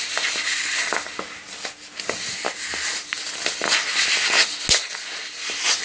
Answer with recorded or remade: recorded